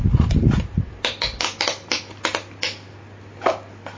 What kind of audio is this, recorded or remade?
recorded